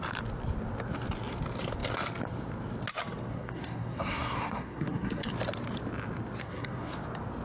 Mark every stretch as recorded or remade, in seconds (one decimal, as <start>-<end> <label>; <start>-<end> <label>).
0.0-3.3 recorded; 3.3-5.3 remade; 5.3-6.4 recorded; 6.4-7.0 remade; 7.0-7.4 recorded